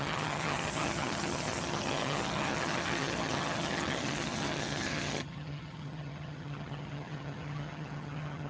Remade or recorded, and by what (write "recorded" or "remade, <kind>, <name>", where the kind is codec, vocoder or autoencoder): remade, vocoder, HiFi-GAN